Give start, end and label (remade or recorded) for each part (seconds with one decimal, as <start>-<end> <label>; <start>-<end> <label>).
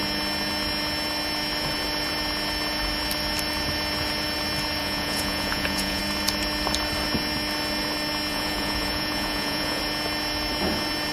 0.0-4.8 recorded; 4.8-6.0 remade; 6.0-8.3 recorded; 8.3-9.8 remade; 9.8-11.1 recorded